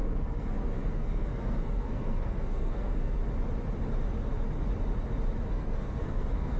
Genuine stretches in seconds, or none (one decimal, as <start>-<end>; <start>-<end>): 3.2-5.5